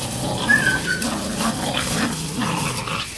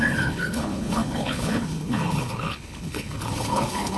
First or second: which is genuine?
first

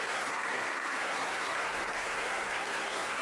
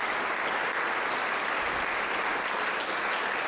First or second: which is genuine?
second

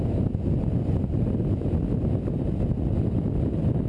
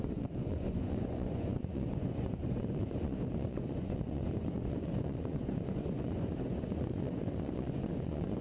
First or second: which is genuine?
first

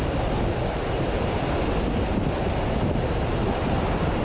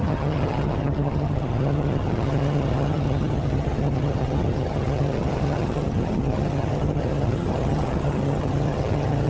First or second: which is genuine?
first